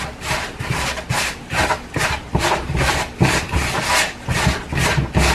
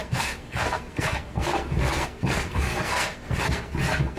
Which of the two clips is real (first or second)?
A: first